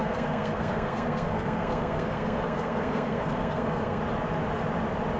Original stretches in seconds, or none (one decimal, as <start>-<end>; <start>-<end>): 4.0-5.2